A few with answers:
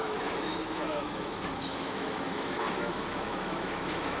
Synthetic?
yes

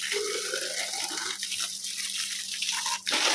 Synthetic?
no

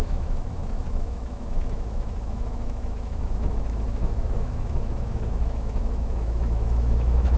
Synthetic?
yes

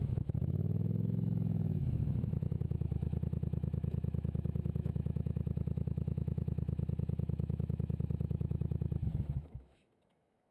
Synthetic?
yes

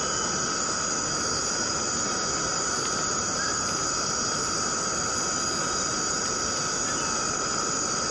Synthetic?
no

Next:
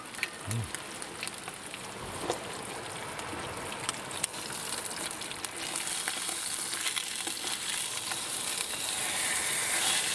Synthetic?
no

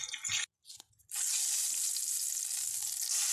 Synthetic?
no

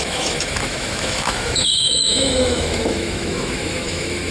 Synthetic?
yes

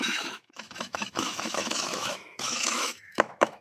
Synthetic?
yes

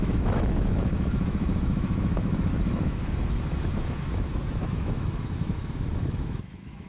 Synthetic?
yes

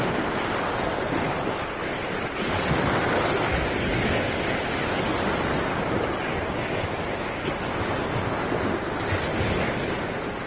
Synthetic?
no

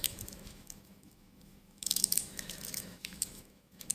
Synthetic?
yes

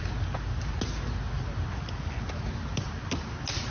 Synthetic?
no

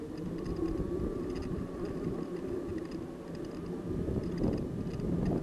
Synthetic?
no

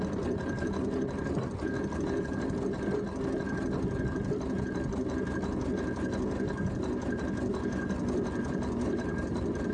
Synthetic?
no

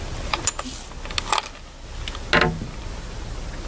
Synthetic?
no